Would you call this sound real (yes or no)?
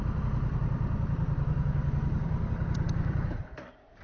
no